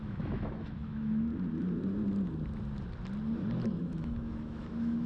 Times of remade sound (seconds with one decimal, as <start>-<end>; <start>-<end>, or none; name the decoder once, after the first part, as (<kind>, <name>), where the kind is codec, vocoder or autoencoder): 0.0-1.3 (autoencoder, DAC-VAE); 3.8-5.1